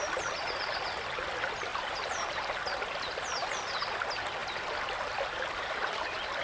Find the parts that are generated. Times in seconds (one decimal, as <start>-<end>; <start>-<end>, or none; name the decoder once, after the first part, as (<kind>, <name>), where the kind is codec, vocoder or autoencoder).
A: 1.7-2.6 (vocoder, BigVGAN v2)